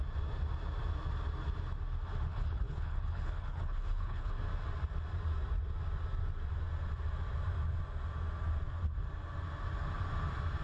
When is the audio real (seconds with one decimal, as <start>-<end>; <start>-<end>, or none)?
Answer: 0.0-2.3; 4.3-10.6